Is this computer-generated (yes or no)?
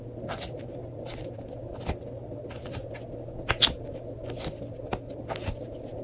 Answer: no